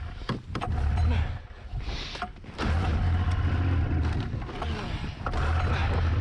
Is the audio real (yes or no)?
yes